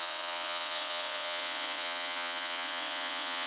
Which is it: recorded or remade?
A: remade